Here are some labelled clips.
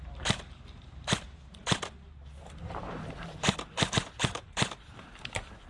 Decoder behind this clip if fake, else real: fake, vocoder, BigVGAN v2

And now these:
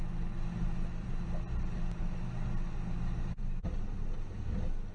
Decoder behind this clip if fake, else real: real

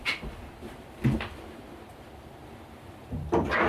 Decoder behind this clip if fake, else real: fake, vocoder, BigVGAN v2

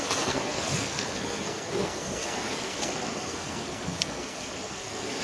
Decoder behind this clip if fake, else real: fake, codec, SNAC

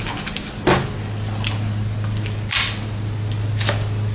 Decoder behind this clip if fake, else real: real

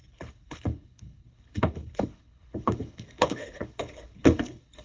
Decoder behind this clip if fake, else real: fake, codec, HILCodec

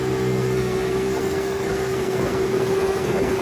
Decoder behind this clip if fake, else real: fake, codec, SNAC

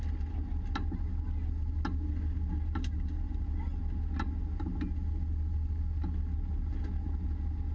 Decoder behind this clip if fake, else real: real